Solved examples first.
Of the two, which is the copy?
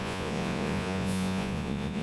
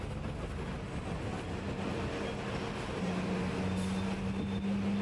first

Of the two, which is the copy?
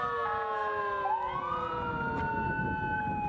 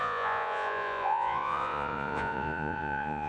second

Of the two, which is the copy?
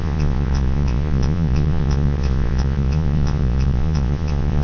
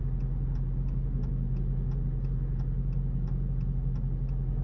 first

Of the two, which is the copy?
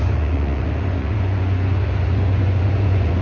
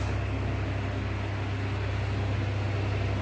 first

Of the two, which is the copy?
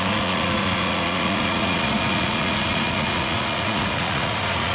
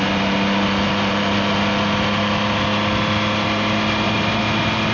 first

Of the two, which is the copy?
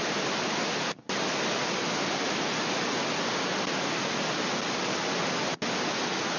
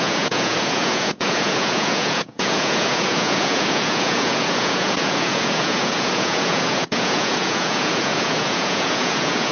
second